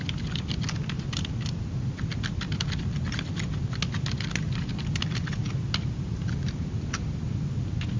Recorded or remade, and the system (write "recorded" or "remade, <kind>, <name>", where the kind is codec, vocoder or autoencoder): recorded